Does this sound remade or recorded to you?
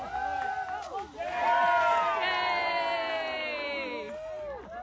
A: recorded